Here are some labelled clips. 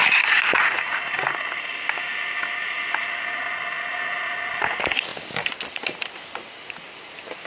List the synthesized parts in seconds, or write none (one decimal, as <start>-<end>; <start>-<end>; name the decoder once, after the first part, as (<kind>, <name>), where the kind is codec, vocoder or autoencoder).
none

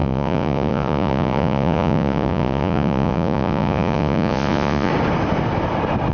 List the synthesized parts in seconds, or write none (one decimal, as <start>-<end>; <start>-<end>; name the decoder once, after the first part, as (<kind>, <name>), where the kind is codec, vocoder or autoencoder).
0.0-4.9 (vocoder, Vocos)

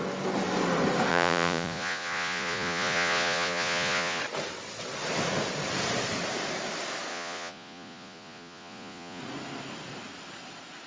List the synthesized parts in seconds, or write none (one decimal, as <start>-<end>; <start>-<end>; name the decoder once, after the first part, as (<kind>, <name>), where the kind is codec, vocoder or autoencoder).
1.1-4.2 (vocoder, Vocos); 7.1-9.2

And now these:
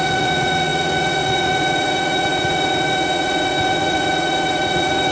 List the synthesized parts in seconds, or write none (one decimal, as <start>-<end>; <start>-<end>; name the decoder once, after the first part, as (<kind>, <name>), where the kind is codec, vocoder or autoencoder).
0.0-5.1 (vocoder, Vocos)

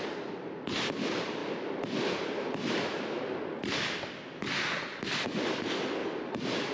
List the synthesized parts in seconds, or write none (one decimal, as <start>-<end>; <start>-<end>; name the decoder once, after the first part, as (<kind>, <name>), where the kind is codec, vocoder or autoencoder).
none

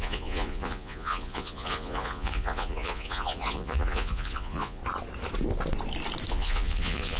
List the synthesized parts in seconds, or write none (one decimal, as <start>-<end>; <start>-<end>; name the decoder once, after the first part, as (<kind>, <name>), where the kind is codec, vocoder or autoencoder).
0.0-4.8 (vocoder, Vocos); 6.3-7.2